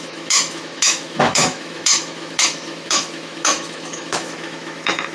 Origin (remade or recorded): remade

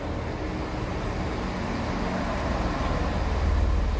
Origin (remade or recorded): recorded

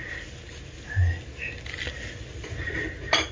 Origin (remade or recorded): recorded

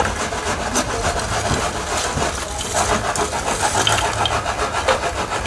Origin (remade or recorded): recorded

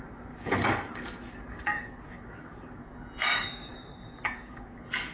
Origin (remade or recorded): remade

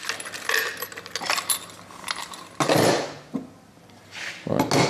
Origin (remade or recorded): recorded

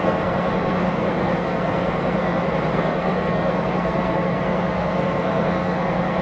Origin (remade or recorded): remade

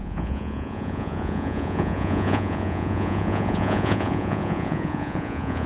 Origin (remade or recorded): remade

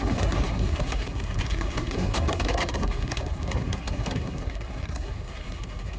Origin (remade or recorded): remade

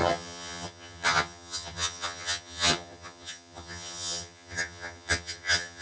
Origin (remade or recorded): remade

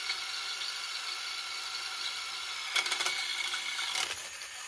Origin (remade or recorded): recorded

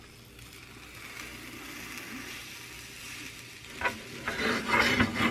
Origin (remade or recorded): recorded